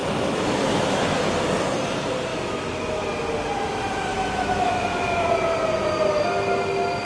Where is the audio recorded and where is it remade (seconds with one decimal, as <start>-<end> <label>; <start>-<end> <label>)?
0.0-1.0 remade; 1.0-2.3 recorded; 2.3-3.0 remade; 3.0-4.1 recorded; 4.1-5.3 remade; 5.3-7.0 recorded